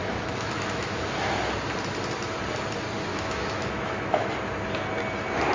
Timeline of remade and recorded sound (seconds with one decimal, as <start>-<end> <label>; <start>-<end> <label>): 0.0-1.1 remade; 1.1-3.1 recorded; 3.1-4.3 remade; 4.3-5.5 recorded